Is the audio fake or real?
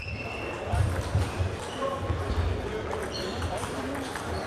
real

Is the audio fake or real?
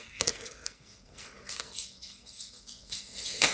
fake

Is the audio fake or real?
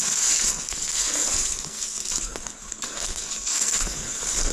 fake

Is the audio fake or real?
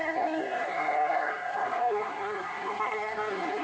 fake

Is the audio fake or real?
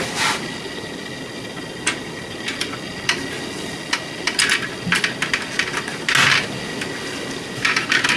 real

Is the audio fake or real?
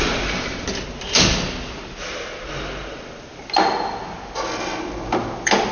real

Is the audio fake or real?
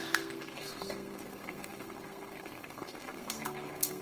fake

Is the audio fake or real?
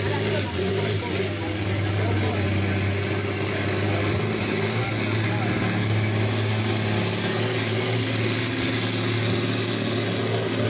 real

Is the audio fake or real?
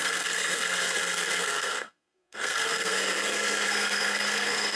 fake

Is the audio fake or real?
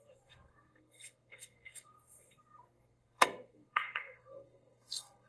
fake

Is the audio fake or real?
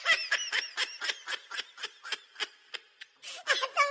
real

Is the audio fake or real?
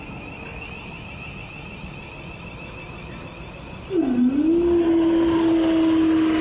real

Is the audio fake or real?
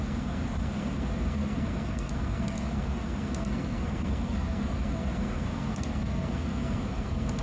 fake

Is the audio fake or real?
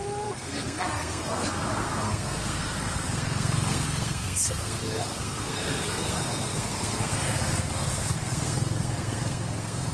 fake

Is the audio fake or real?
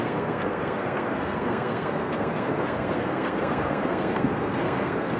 fake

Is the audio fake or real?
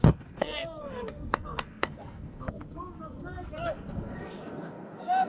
fake